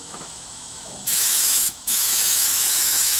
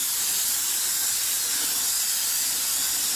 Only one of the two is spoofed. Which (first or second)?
first